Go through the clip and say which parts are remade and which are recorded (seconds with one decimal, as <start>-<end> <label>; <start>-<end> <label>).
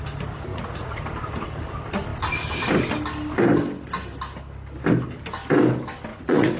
0.0-0.5 recorded; 0.5-1.0 remade; 1.0-6.1 recorded; 6.1-6.6 remade